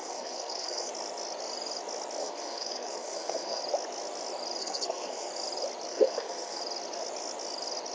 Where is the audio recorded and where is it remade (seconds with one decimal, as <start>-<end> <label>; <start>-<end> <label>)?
0.0-0.9 remade; 0.9-2.2 recorded; 2.2-3.6 remade; 3.6-4.6 recorded; 4.6-5.3 remade; 5.3-5.9 recorded; 5.9-6.6 remade; 6.6-7.9 recorded